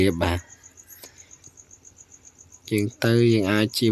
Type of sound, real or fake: real